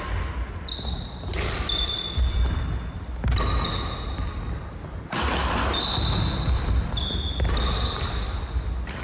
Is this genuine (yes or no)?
yes